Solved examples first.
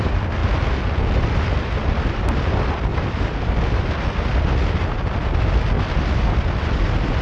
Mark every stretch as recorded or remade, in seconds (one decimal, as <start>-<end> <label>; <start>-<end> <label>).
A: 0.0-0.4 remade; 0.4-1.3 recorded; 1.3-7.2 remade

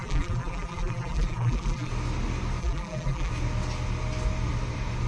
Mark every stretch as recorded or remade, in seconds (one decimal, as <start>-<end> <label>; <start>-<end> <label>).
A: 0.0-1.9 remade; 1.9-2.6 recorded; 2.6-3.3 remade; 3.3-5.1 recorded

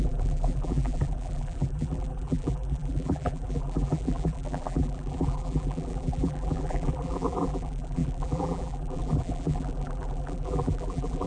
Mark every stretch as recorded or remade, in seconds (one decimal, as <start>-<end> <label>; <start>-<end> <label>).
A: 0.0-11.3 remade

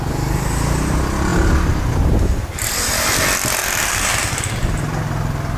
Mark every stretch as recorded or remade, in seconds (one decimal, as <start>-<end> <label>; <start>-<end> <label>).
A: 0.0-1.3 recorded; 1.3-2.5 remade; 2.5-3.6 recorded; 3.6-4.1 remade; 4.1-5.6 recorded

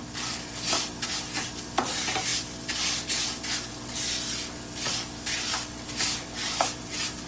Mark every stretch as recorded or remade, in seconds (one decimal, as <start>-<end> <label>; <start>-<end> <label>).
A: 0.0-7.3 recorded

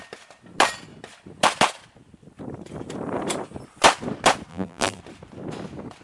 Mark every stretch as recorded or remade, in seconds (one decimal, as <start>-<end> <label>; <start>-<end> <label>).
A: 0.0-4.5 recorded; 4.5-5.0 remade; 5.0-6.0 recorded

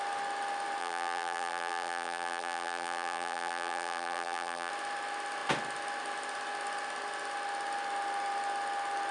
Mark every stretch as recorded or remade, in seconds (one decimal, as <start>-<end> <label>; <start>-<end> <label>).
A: 0.0-0.8 recorded; 0.8-4.7 remade; 4.7-9.1 recorded